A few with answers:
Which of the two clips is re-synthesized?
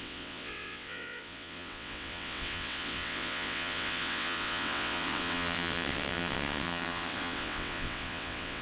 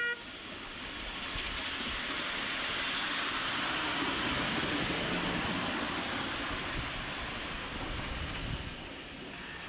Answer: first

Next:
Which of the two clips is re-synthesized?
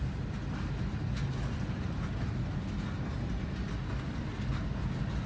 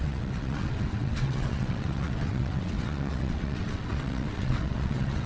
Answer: second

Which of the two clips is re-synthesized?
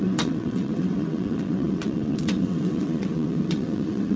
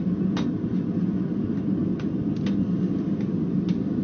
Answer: first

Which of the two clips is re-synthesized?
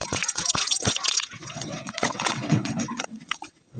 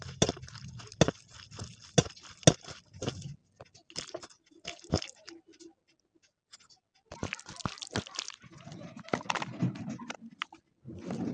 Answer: first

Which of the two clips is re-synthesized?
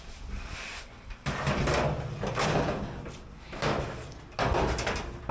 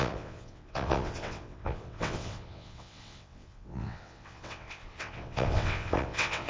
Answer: second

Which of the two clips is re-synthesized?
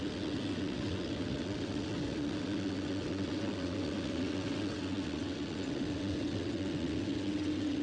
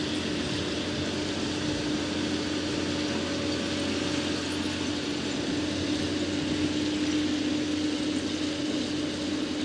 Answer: first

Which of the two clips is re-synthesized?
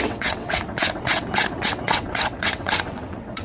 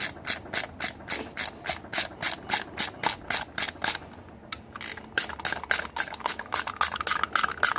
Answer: first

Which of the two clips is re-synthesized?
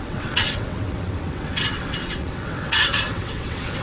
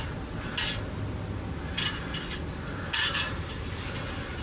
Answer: first